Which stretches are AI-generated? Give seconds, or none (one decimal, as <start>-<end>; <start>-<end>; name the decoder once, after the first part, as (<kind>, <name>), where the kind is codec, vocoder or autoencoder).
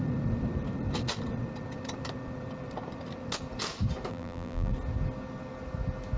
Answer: 4.1-4.7 (vocoder, BigVGAN v2)